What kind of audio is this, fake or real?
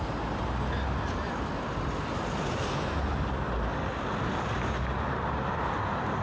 real